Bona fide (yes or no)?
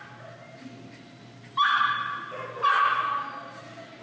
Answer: yes